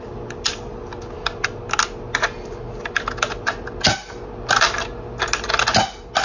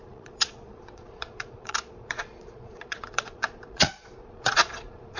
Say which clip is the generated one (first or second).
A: second